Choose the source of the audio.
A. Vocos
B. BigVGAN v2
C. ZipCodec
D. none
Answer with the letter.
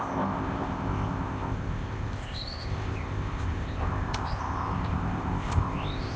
C